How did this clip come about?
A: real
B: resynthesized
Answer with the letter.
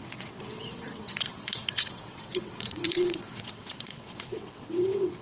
B